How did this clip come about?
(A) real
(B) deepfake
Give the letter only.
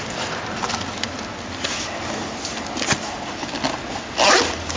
A